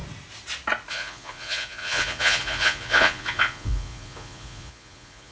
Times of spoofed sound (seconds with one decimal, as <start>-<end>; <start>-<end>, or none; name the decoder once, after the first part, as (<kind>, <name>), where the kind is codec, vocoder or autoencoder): 0.9-5.3 (vocoder, Vocos)